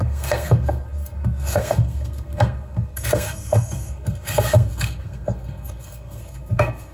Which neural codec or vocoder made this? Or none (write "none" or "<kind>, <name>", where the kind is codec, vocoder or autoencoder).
codec, SNAC